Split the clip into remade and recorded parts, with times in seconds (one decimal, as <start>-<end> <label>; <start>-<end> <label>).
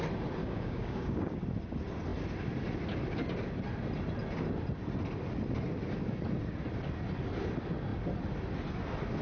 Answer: 0.0-0.4 recorded; 0.4-1.4 remade; 1.4-9.2 recorded